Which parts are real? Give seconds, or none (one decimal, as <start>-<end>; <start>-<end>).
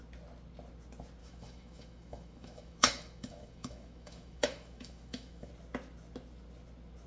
0.0-1.2; 5.5-7.1